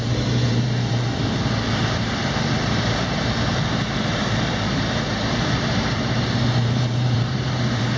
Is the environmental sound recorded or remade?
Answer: remade